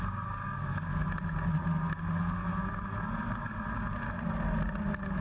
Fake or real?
real